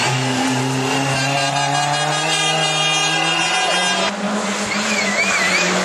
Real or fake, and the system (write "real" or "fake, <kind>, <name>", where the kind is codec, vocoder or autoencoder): real